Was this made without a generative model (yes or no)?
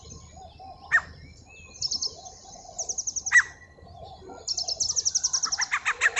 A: yes